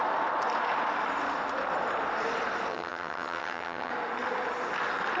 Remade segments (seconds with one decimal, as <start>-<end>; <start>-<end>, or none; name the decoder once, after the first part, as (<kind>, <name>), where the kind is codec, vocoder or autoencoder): 2.7-3.9 (vocoder, HiFi-GAN)